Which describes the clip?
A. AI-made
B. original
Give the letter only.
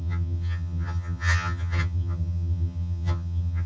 A